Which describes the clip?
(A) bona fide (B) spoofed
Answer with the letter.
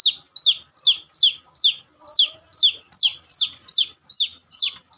A